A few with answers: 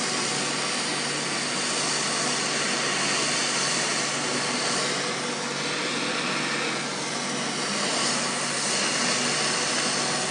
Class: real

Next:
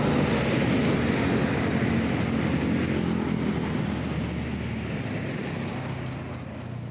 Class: real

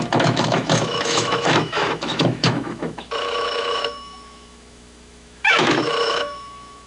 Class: fake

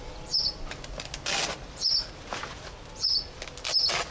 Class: real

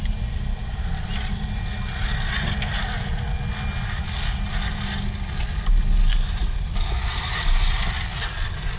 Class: real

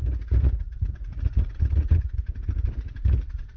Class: fake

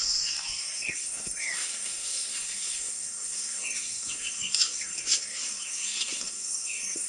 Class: fake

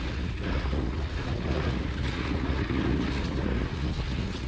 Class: fake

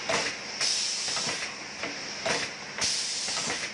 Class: real